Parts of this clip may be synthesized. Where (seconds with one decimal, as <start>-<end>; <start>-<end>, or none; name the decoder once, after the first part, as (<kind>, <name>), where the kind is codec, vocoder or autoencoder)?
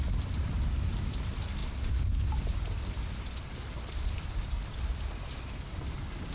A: none